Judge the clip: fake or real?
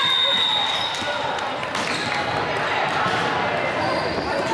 real